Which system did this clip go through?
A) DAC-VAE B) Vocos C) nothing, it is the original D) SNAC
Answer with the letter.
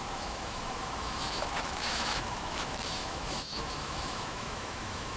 A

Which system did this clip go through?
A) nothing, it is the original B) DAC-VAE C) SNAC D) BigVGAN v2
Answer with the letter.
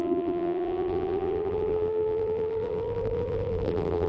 D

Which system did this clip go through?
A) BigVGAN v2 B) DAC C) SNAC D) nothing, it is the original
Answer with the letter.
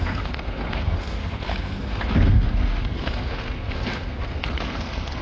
C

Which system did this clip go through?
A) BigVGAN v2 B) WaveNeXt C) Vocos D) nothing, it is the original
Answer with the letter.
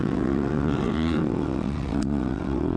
B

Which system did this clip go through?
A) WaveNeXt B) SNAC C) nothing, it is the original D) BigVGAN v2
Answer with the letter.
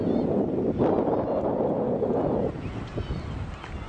C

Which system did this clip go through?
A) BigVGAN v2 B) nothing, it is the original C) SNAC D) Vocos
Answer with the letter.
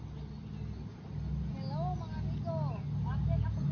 B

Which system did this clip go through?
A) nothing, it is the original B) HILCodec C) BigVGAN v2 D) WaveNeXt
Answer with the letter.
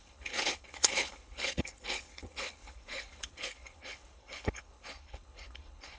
B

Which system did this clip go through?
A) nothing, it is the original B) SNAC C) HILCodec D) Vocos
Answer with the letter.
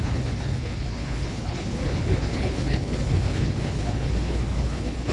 C